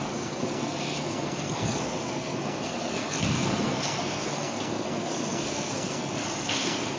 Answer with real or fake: fake